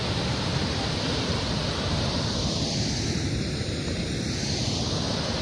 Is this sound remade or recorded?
remade